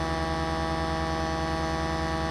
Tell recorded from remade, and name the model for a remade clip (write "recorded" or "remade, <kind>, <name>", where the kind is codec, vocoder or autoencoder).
recorded